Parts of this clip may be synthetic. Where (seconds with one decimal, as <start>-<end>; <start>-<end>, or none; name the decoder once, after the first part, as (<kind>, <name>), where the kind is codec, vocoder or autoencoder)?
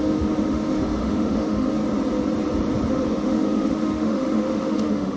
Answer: 0.0-1.8 (autoencoder, DAC-VAE); 2.9-5.2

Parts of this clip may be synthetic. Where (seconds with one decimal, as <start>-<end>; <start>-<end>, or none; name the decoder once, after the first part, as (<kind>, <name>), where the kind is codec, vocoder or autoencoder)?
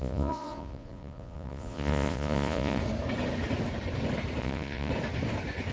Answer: 0.0-2.8 (vocoder, Vocos); 4.4-4.9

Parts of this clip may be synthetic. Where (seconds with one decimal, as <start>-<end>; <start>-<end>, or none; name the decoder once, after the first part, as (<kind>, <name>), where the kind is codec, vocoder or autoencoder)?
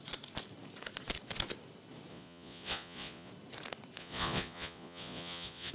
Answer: 2.1-3.3 (vocoder, Vocos); 4.0-5.7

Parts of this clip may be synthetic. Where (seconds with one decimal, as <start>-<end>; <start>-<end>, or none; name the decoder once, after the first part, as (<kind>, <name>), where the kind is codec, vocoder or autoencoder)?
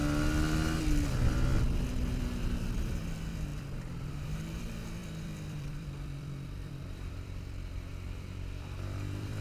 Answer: 2.8-9.4 (vocoder, BigVGAN v2)